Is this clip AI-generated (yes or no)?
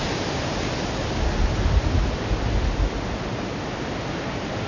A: no